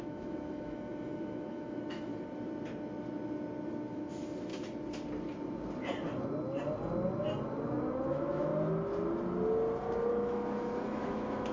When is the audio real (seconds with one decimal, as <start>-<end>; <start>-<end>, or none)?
2.1-3.9; 4.5-8.1; 8.5-10.1